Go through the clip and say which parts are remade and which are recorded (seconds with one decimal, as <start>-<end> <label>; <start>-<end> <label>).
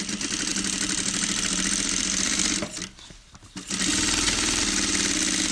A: 0.0-3.9 recorded; 3.9-4.6 remade; 4.6-5.5 recorded